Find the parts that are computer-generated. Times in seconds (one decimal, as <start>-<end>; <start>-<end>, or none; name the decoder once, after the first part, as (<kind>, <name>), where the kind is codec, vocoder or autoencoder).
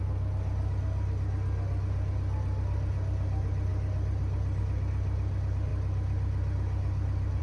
none